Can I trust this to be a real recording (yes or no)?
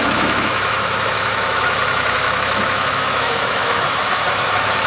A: no